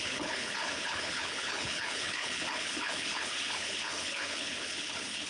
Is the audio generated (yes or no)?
yes